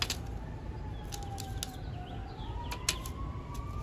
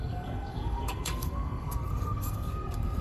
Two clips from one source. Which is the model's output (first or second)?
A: second